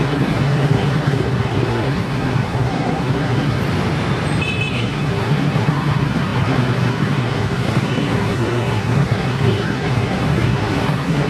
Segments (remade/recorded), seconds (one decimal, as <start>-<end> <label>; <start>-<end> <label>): 0.0-3.6 remade; 3.6-4.7 recorded; 4.7-11.3 remade